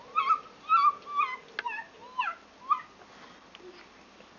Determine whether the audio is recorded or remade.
recorded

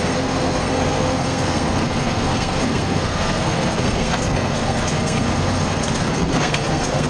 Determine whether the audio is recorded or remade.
remade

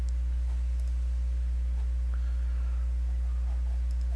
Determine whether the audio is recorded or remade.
recorded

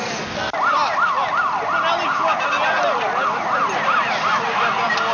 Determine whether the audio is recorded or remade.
recorded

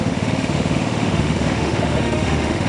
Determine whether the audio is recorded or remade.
remade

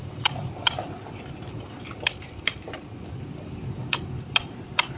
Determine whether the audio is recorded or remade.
remade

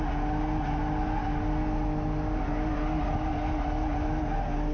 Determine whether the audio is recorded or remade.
recorded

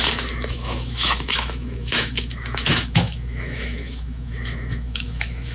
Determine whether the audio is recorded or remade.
remade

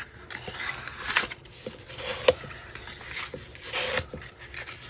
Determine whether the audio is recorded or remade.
recorded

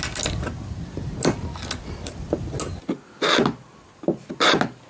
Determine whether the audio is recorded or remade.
recorded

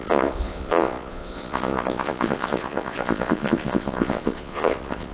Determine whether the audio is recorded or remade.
remade